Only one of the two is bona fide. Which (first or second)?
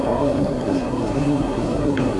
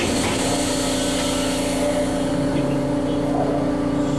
second